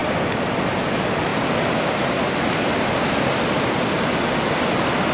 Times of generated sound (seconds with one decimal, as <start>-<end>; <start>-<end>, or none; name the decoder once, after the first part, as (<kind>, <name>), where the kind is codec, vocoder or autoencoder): none